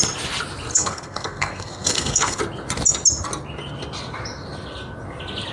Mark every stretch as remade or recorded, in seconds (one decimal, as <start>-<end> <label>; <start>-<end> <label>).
0.0-0.7 recorded; 0.7-2.4 remade; 2.4-5.5 recorded